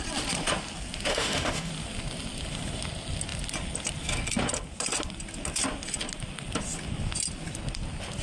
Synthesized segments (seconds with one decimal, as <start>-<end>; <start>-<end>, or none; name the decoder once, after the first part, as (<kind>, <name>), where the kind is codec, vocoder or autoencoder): 1.1-1.7 (autoencoder, DAC-VAE)